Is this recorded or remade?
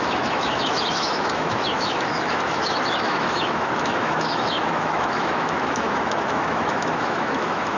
remade